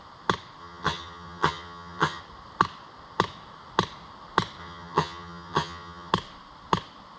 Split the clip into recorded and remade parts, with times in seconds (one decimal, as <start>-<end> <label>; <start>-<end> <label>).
0.0-0.6 recorded; 0.6-2.2 remade; 2.2-4.6 recorded; 4.6-6.1 remade; 6.1-7.2 recorded